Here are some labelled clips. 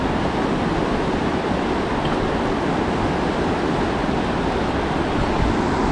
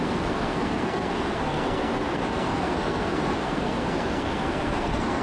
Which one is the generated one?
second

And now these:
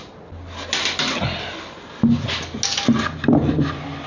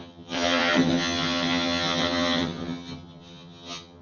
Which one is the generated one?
second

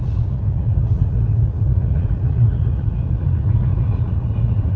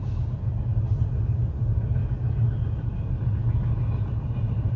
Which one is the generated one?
first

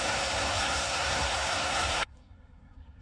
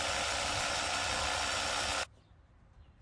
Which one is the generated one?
first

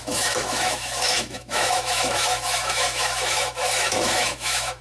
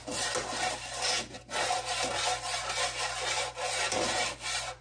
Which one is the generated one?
first